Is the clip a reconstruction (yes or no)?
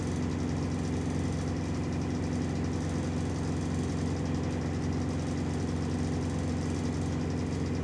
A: no